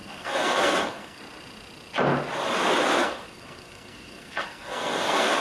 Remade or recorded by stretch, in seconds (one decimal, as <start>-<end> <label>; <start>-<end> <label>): 0.0-1.2 remade; 1.2-3.0 recorded; 3.0-5.4 remade